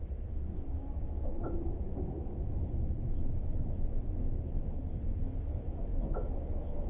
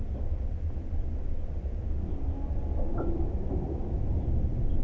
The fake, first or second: first